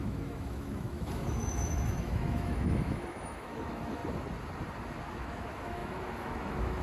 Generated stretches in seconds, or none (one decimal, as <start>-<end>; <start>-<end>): 0.0-4.0; 5.1-6.8